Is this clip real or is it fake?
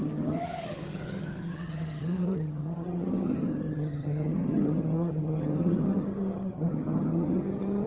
fake